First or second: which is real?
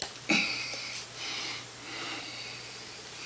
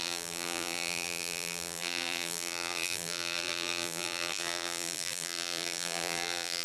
first